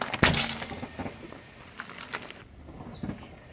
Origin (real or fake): real